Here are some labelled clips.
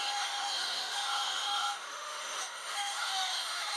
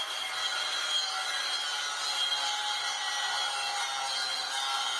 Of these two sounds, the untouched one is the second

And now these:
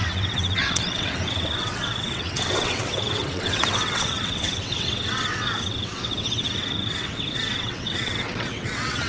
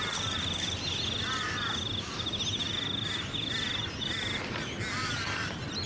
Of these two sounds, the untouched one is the second